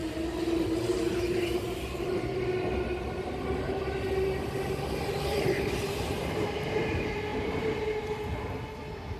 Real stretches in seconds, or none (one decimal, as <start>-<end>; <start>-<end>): 0.0-5.2; 7.3-9.2